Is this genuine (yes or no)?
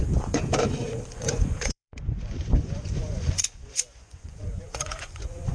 no